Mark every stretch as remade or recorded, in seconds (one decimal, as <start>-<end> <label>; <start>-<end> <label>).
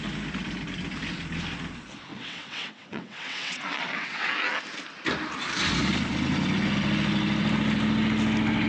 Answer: 0.0-2.1 recorded; 2.1-4.3 remade; 4.3-8.7 recorded